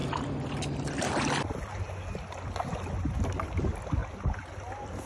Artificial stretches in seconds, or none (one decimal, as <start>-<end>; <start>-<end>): none